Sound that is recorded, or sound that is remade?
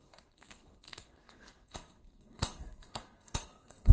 remade